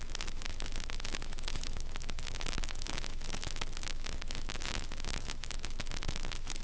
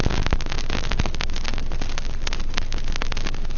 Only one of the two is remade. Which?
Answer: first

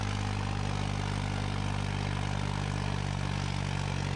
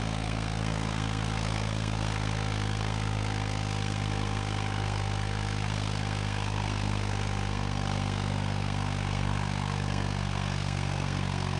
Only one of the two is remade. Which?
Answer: second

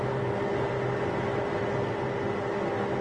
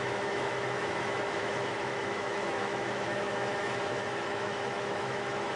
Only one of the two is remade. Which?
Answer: second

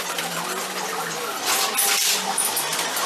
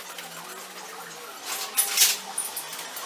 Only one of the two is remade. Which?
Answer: first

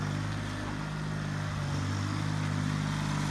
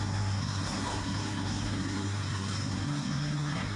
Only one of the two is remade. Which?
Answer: second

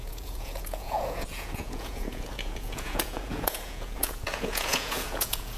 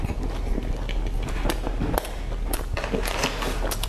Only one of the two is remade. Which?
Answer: first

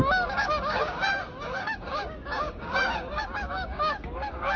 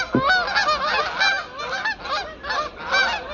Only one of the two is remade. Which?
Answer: first